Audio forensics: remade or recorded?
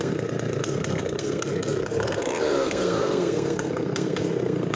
remade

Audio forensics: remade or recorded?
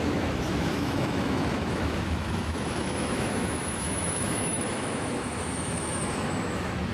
remade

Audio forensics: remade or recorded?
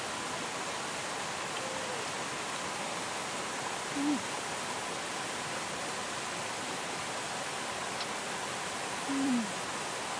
recorded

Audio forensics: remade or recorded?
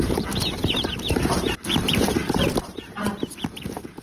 remade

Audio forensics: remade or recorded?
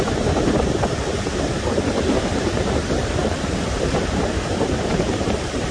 remade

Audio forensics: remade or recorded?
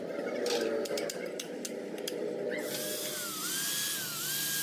recorded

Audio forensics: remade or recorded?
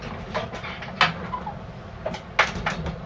recorded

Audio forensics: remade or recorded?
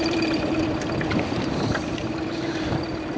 remade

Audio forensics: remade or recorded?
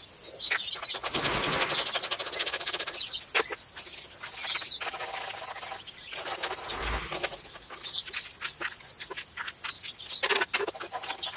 recorded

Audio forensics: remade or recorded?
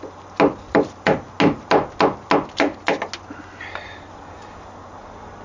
recorded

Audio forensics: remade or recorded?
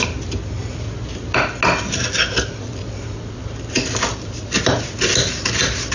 recorded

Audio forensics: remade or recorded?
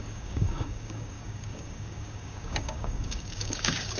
remade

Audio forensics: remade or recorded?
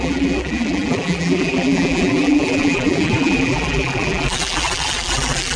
remade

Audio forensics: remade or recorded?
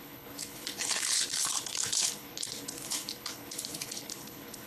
remade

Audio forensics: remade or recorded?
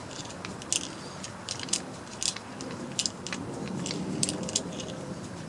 recorded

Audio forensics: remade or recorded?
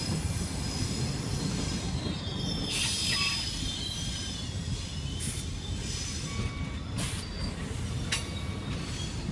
recorded